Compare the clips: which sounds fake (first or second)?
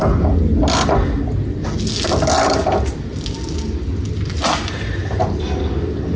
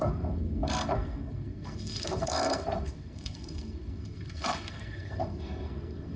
second